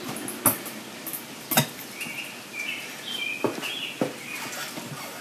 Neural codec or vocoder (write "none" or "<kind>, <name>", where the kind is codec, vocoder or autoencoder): none